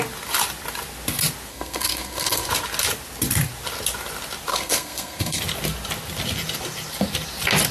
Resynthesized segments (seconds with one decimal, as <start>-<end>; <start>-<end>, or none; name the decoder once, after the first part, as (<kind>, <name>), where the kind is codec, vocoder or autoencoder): 1.5-2.5 (codec, SNAC); 4.5-5.4